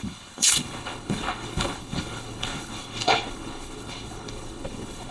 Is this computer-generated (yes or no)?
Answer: yes